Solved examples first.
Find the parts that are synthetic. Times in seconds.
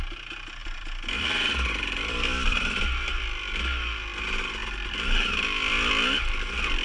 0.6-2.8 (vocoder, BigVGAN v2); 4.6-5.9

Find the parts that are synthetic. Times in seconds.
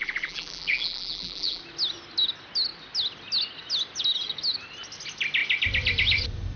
0.0-1.6 (vocoder, BigVGAN v2)